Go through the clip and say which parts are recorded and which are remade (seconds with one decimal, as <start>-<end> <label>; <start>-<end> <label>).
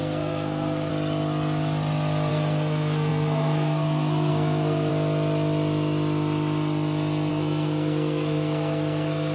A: 0.0-0.9 remade; 0.9-2.3 recorded; 2.3-4.9 remade; 4.9-7.3 recorded; 7.3-9.3 remade